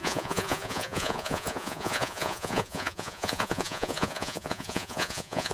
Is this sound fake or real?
fake